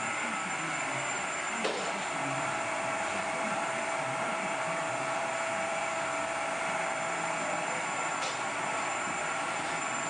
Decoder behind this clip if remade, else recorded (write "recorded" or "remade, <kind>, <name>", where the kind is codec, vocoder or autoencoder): remade, vocoder, BigVGAN v2